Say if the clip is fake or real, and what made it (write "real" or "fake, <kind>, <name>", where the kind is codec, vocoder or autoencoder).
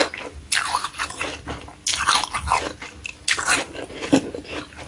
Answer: real